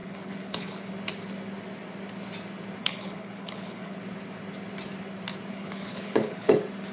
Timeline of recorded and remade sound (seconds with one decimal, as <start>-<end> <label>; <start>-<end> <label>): 0.0-0.9 remade; 0.9-2.8 recorded; 2.8-4.0 remade; 4.0-5.5 recorded; 5.5-6.5 remade; 6.5-6.9 recorded

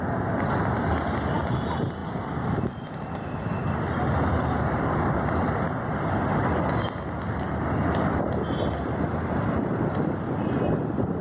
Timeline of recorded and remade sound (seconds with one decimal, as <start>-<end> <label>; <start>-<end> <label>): 0.0-11.2 recorded